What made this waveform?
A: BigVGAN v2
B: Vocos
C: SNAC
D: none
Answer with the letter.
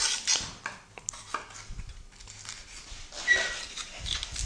D